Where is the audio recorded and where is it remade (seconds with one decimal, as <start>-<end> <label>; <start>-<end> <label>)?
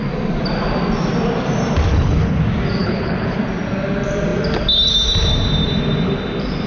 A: 0.0-1.9 recorded; 1.9-2.4 remade; 2.4-2.8 recorded; 2.8-3.4 remade; 3.4-6.7 recorded